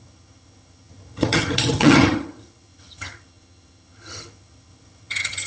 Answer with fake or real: fake